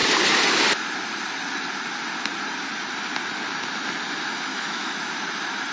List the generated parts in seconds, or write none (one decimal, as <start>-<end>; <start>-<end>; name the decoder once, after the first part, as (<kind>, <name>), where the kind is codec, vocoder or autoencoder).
4.5-5.1 (autoencoder, DAC-VAE)